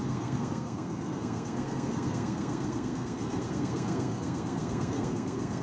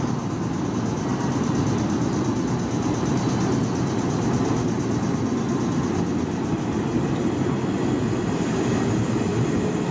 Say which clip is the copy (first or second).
first